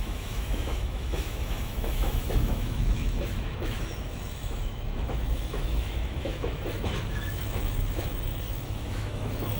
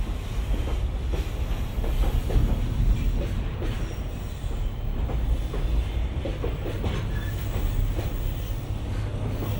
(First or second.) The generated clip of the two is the first